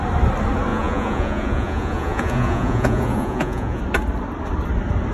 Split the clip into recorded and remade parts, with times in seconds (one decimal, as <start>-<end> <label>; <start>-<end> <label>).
0.0-0.7 recorded; 0.7-3.8 remade; 3.8-5.1 recorded